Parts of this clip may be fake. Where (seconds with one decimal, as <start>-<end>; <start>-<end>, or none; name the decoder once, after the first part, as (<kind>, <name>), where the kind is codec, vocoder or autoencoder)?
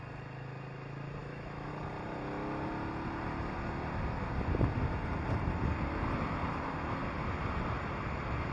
1.2-1.7 (autoencoder, DAC-VAE)